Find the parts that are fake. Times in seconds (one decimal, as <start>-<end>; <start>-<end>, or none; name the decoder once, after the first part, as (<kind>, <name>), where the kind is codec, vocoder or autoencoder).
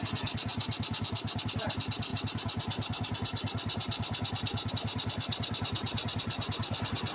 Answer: none